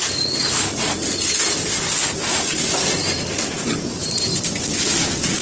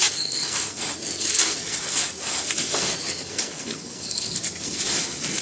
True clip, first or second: first